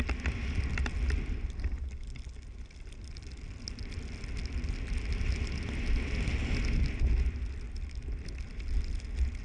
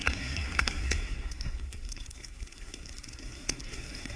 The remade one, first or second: second